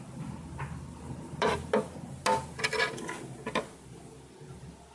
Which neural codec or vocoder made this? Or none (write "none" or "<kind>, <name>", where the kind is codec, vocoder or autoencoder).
none